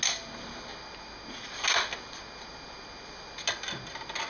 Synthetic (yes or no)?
no